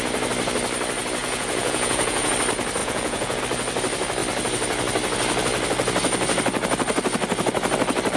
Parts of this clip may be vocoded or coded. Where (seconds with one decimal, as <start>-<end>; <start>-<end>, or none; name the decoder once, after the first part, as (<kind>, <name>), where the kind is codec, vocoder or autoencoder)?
1.2-2.3 (vocoder, Vocos); 2.8-3.4